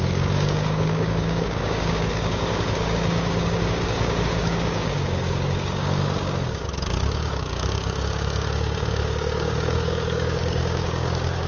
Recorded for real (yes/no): no